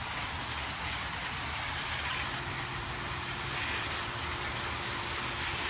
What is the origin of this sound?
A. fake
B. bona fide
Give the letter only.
B